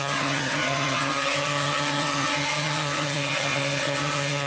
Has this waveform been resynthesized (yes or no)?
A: yes